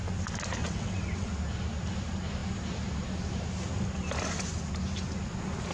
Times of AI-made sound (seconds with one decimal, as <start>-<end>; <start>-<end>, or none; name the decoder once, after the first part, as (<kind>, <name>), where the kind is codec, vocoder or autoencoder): 0.6-1.3 (vocoder, WaveNeXt)